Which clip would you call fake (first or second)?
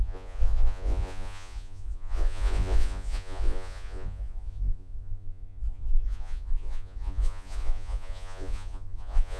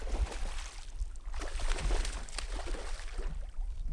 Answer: first